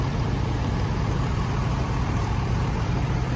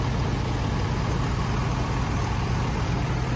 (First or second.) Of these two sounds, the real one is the second